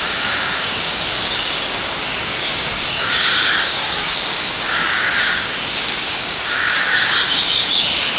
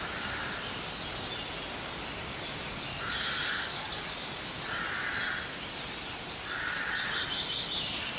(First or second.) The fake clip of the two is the first